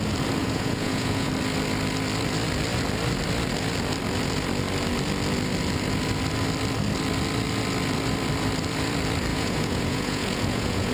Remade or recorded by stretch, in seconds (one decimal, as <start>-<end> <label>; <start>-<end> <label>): 0.0-0.4 recorded; 0.4-1.3 remade; 1.3-9.3 recorded; 9.3-10.9 remade

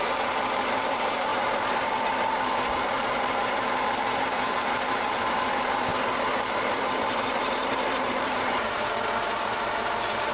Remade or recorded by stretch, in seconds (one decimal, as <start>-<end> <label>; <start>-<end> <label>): 0.0-5.9 remade; 5.9-6.6 recorded; 6.6-10.3 remade